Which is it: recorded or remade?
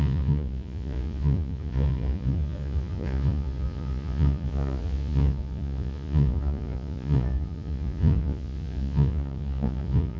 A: remade